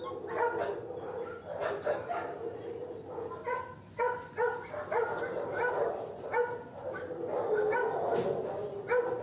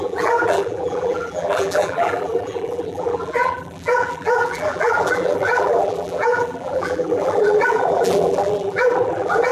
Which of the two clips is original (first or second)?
first